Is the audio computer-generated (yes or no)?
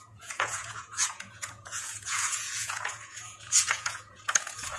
yes